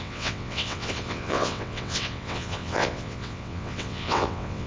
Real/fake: fake